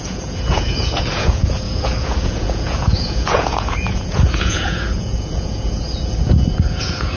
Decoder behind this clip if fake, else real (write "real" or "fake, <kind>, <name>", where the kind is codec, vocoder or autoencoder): fake, vocoder, Vocos